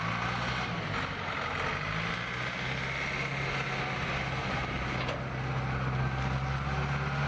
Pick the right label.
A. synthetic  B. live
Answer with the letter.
B